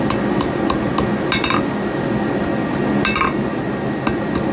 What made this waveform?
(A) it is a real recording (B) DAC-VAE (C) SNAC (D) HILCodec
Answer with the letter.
A